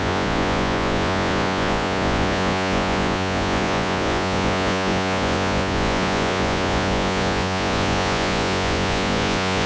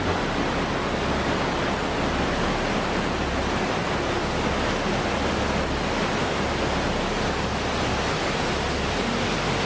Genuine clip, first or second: second